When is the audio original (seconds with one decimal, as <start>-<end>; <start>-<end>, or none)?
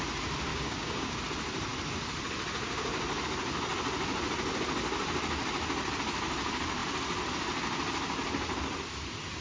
0.0-0.5; 1.2-9.4